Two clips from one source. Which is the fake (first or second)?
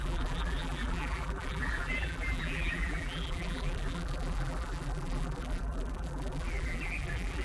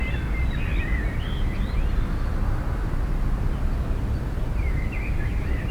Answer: first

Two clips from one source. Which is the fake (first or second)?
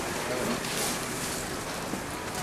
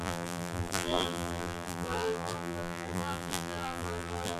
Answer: second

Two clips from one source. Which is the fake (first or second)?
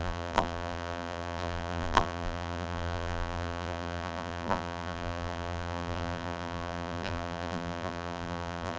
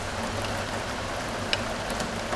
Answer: first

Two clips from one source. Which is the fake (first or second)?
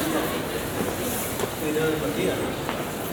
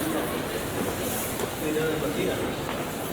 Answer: second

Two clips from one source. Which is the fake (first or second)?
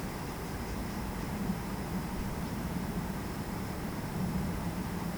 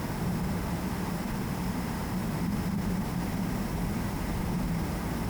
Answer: first